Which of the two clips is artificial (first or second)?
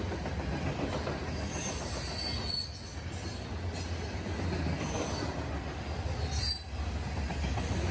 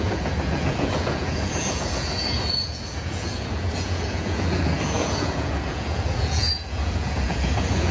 second